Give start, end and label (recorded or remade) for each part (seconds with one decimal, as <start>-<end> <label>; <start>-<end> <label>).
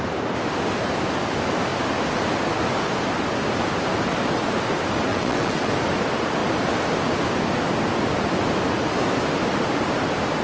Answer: 0.0-5.1 recorded; 5.1-5.7 remade; 5.7-10.4 recorded